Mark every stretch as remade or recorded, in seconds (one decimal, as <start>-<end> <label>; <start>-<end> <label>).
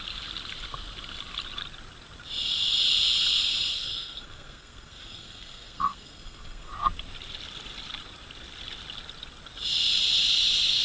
0.0-3.7 recorded; 3.7-6.7 remade; 6.7-10.8 recorded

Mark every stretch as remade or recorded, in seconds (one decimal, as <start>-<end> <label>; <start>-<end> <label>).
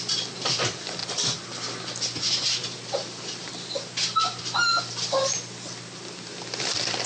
0.0-1.0 remade; 1.0-4.8 recorded; 4.8-7.1 remade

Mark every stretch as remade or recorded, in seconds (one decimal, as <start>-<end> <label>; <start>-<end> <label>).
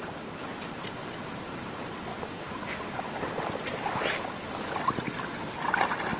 0.0-0.5 recorded; 0.5-1.3 remade; 1.3-6.2 recorded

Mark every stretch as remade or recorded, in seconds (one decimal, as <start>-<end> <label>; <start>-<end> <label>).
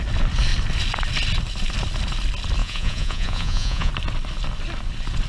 0.0-2.6 recorded; 2.6-3.9 remade; 3.9-5.3 recorded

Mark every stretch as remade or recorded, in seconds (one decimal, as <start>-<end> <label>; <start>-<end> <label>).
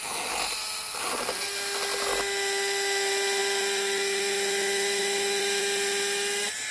0.0-6.7 recorded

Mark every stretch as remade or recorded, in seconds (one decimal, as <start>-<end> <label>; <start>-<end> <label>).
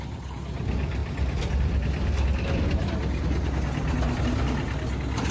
0.0-5.3 recorded